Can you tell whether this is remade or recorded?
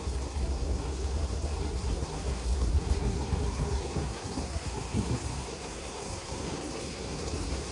remade